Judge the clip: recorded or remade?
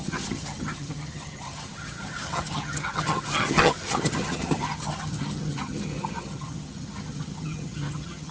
remade